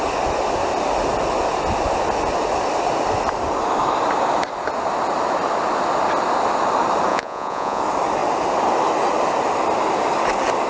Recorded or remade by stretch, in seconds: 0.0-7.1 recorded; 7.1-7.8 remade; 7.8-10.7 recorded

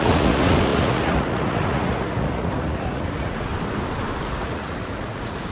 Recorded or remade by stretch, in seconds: 0.0-3.5 remade; 3.5-4.3 recorded; 4.3-5.5 remade

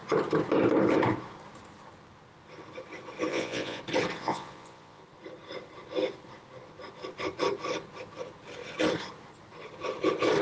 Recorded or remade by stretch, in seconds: 0.0-3.3 recorded; 3.3-3.8 remade; 3.8-4.2 recorded; 4.2-5.0 remade; 5.0-10.4 recorded

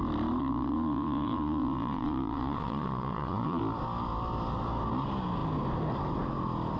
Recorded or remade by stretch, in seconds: 0.0-0.4 recorded; 0.4-3.6 remade; 3.6-6.8 recorded